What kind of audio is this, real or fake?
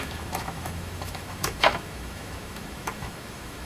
fake